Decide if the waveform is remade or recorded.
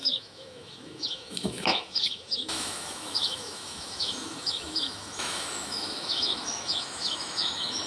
remade